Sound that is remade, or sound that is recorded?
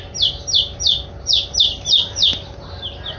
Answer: recorded